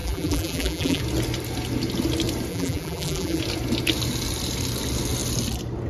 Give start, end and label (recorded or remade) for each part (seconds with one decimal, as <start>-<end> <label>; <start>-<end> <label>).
0.0-1.0 remade; 1.0-2.5 recorded; 2.5-3.4 remade; 3.4-5.9 recorded